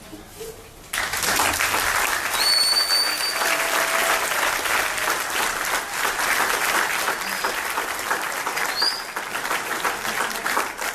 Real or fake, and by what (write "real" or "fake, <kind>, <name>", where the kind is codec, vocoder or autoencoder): real